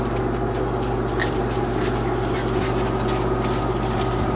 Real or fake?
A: real